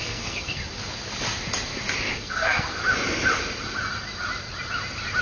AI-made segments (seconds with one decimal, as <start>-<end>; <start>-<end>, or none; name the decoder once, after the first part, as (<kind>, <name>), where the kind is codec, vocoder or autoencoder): 0.0-0.6 (codec, SNAC); 2.1-2.8